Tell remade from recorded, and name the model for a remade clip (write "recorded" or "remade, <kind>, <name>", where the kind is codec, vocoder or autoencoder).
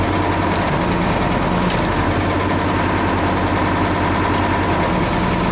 recorded